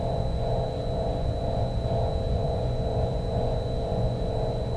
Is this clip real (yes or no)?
no